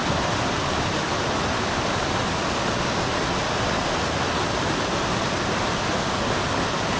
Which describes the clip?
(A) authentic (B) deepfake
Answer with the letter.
A